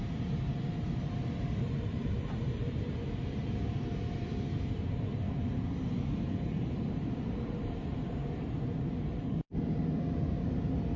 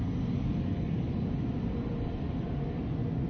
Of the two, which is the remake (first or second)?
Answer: first